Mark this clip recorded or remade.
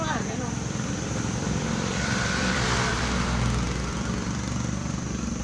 remade